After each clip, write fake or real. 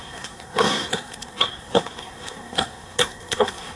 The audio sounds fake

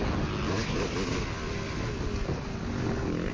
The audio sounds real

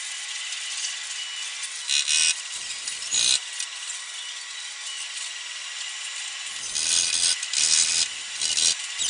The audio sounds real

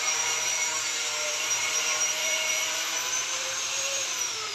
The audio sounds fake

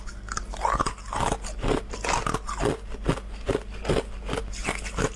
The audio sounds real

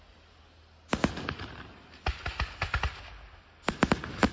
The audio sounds real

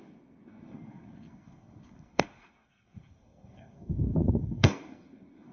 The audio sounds fake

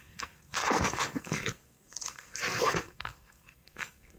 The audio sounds fake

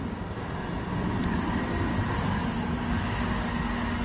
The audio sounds real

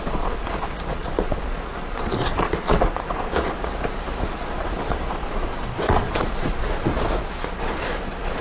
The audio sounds fake